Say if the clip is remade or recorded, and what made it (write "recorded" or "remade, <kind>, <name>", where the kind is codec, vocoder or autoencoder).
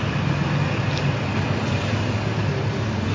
recorded